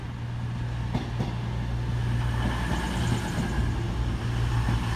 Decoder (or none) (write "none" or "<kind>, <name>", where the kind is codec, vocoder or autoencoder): none